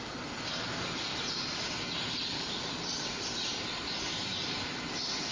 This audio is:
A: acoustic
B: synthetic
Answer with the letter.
A